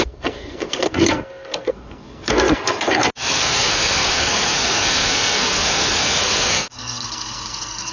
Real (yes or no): no